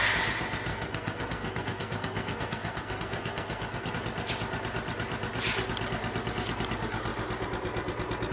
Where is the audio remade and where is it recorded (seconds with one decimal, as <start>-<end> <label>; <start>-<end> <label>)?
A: 0.0-0.7 recorded; 0.7-3.9 remade; 3.9-8.3 recorded